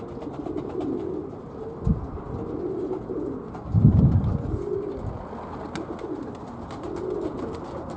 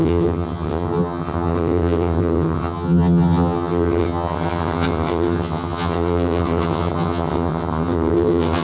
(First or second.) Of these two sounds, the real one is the first